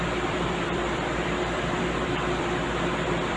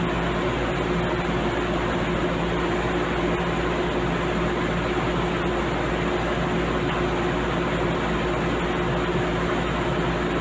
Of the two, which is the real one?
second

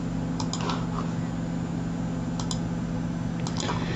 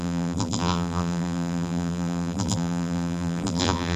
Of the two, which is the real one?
first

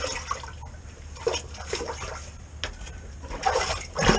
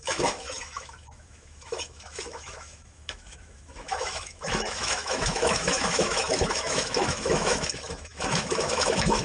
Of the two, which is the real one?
first